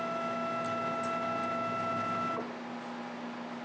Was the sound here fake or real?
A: real